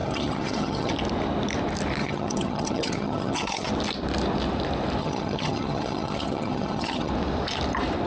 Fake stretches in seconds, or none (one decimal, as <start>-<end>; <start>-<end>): 0.0-0.9; 2.0-3.7; 5.0-7.1